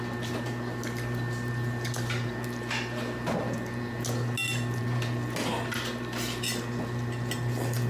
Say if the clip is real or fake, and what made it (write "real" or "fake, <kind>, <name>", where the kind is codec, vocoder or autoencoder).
real